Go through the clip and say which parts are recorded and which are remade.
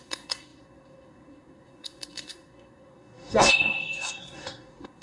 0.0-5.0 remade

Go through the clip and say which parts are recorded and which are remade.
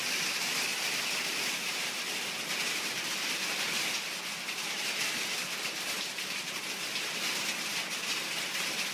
0.0-0.7 recorded; 0.7-2.0 remade; 2.0-8.9 recorded